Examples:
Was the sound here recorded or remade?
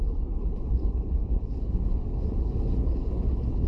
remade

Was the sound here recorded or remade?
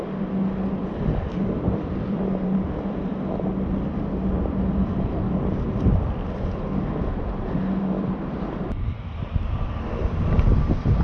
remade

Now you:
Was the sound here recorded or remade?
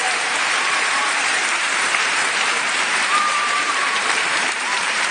remade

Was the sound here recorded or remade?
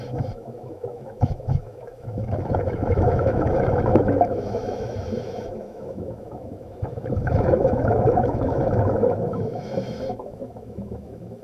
remade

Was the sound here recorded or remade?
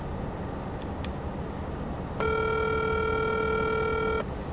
recorded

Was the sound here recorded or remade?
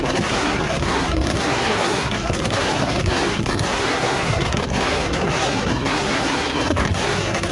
remade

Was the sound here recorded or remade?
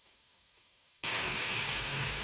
remade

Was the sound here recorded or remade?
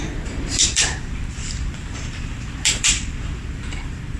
remade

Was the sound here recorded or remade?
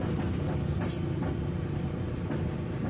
recorded